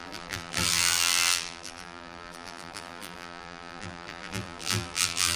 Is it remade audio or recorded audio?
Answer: remade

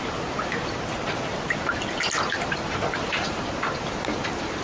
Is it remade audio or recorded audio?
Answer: remade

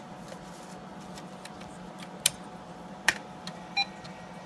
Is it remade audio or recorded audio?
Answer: recorded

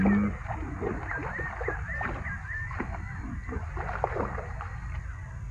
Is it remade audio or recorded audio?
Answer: recorded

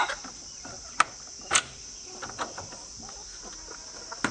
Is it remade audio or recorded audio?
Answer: recorded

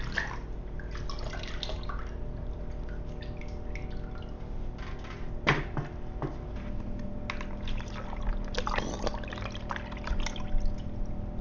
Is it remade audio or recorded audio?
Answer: recorded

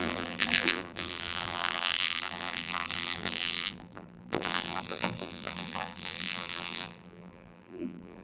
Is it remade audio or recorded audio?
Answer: remade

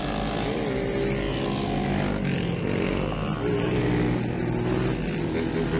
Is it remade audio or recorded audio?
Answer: recorded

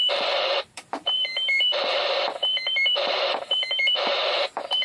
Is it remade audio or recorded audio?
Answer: remade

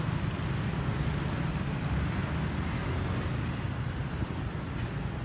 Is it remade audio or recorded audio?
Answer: recorded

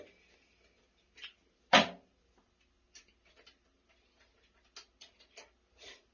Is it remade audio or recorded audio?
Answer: recorded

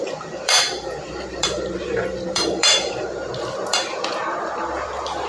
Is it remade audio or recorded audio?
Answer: remade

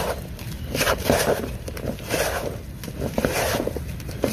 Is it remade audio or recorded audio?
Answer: remade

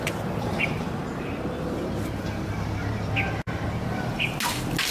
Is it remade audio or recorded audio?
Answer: recorded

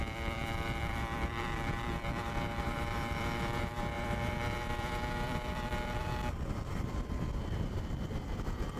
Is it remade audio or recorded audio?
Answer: remade